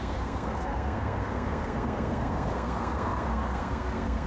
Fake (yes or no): yes